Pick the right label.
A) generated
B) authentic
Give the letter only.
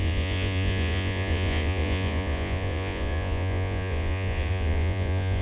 A